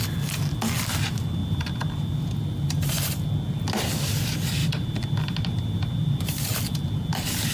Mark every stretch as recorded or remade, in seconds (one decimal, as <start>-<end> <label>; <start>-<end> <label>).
0.0-1.4 recorded; 1.4-2.9 remade; 2.9-4.6 recorded; 4.6-6.6 remade; 6.6-7.5 recorded